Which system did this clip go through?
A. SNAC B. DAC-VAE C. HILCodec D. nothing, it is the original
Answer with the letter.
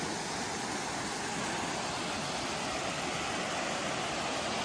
D